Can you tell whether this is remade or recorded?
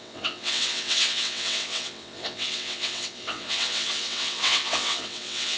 remade